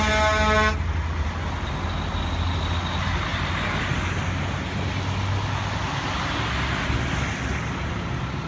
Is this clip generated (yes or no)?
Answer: no